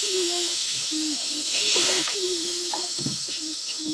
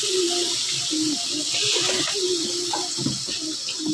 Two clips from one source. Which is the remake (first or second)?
first